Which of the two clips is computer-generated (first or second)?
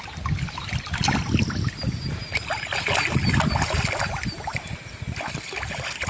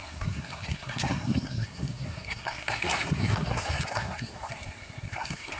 second